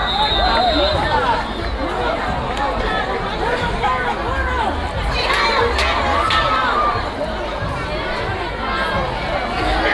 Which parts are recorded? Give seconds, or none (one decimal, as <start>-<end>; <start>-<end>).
0.0-9.9